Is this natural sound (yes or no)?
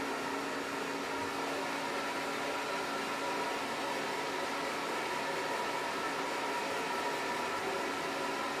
yes